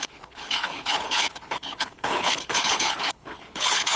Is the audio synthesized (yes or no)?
yes